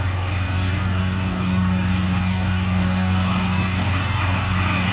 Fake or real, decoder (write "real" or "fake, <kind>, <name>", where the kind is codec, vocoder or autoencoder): fake, codec, DAC